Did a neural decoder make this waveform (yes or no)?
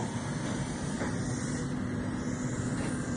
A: no